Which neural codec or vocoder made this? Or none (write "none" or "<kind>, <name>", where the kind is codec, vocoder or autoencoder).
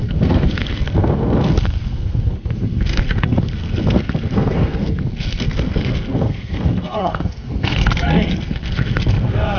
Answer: codec, SNAC